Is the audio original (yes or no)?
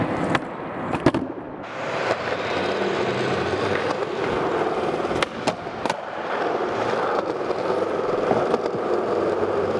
no